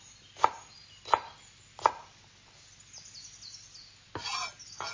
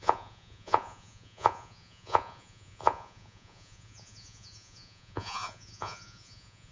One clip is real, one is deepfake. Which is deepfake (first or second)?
second